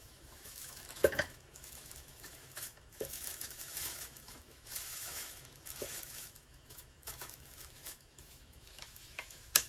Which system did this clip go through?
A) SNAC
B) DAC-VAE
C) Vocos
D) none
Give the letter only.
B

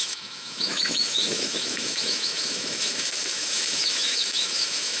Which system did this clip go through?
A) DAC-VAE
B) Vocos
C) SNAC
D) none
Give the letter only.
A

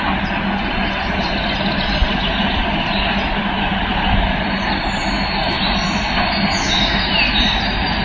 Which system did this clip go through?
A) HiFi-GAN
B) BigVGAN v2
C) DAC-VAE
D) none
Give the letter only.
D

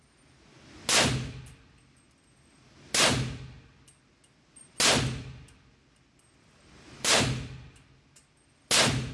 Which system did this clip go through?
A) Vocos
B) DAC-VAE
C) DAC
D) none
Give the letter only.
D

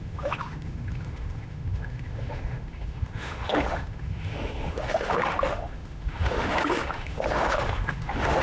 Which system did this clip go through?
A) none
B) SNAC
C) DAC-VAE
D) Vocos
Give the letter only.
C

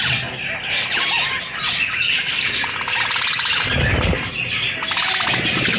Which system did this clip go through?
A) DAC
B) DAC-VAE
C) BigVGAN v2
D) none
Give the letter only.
D